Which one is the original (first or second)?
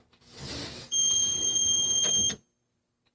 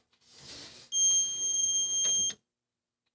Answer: second